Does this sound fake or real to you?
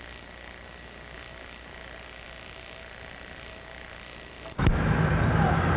real